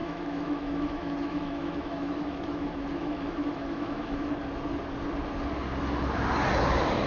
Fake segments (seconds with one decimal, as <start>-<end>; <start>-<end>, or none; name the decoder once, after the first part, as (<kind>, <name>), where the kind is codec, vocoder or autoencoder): 0.0-4.3 (autoencoder, DAC-VAE)